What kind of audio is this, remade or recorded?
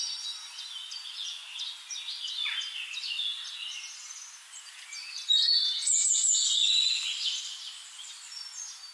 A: recorded